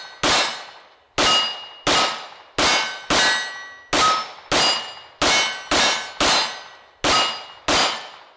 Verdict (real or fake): real